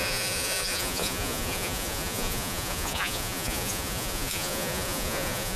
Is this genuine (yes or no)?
no